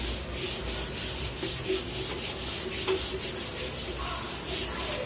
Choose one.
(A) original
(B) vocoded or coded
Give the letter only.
A